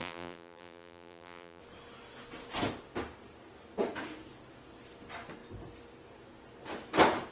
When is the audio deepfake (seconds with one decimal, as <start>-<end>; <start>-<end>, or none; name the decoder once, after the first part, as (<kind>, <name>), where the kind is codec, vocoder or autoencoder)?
0.0-1.6 (vocoder, BigVGAN v2)